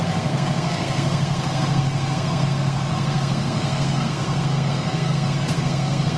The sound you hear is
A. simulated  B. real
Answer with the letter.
A